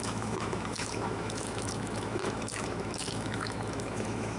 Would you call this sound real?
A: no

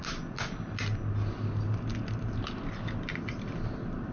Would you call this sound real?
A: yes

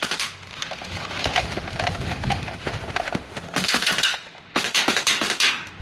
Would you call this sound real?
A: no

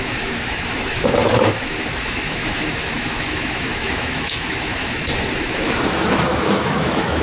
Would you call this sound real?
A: no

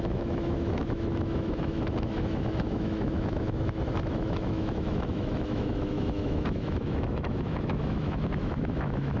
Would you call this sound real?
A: no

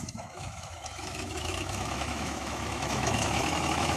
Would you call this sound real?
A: no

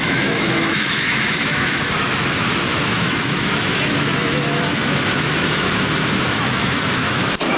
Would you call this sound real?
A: no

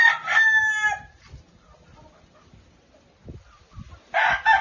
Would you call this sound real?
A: yes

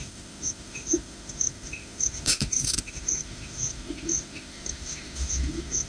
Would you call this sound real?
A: no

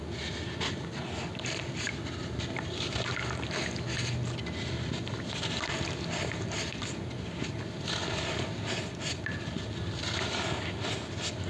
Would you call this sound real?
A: yes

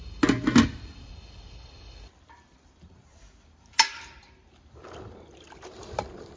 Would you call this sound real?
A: yes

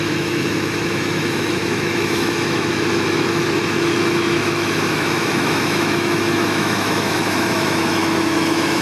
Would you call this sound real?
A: no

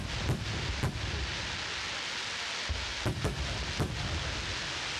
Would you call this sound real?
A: yes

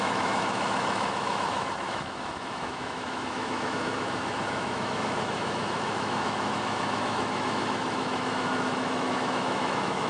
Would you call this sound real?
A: no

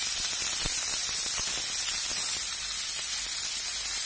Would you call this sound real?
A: yes